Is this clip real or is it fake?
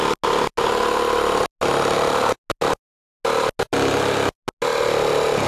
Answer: real